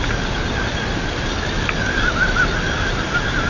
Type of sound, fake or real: real